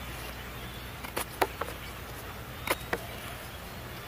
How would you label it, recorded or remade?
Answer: recorded